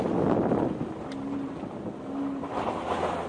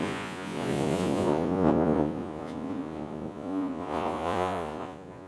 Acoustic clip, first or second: first